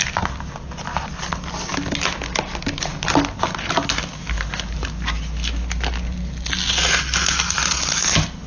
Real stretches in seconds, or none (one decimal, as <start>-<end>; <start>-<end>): 0.0-8.5